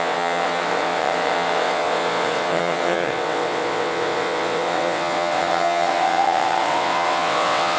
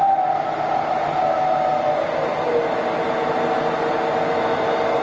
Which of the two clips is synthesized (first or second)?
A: first